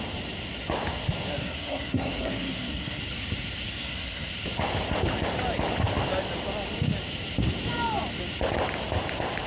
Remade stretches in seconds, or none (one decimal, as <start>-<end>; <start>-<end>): 1.4-3.0; 3.8-4.3